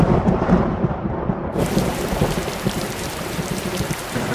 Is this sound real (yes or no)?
no